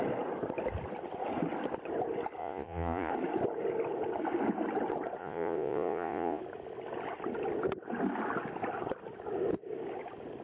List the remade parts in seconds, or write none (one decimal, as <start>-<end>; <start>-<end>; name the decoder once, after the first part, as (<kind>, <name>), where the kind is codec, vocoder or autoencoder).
2.4-3.1 (vocoder, Vocos); 5.2-6.4